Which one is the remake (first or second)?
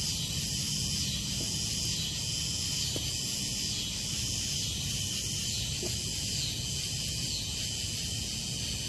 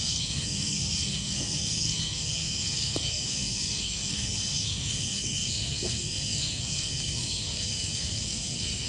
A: second